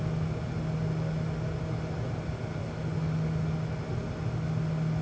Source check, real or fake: real